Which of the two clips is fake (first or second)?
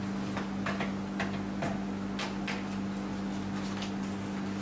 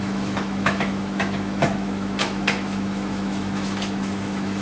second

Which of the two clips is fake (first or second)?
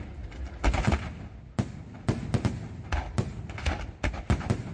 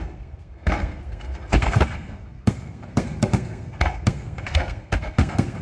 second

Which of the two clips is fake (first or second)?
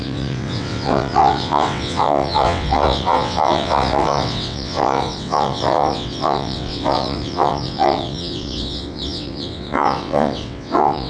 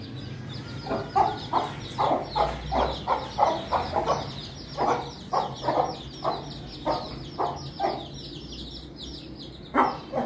first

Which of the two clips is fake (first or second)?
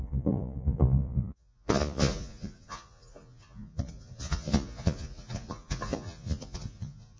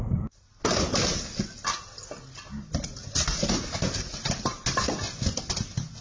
first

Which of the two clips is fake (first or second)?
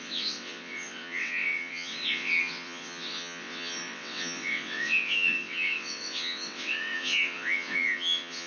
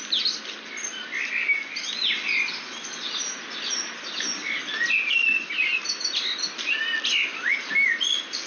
first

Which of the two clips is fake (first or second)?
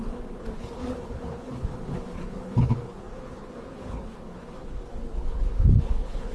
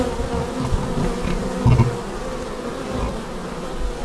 first